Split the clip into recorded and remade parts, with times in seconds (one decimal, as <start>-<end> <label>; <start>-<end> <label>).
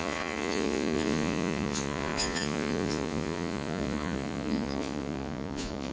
0.0-5.9 remade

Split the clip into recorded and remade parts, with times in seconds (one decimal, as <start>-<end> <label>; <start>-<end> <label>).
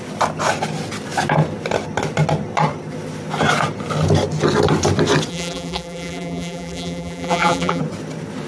0.0-5.3 recorded; 5.3-7.8 remade; 7.8-8.5 recorded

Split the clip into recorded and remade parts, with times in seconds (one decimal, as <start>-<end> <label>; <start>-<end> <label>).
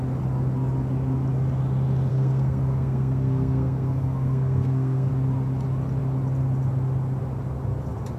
0.0-2.1 recorded; 2.1-5.1 remade; 5.1-8.2 recorded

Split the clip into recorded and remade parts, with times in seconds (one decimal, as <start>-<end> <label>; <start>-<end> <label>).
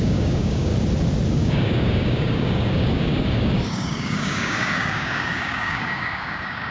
0.0-0.7 remade; 0.7-1.3 recorded; 1.3-6.7 remade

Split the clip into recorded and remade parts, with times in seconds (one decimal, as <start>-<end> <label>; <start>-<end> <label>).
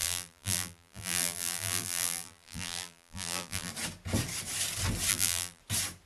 0.0-3.7 remade; 3.7-5.1 recorded; 5.1-5.6 remade; 5.6-6.1 recorded